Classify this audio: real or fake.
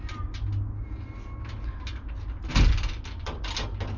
real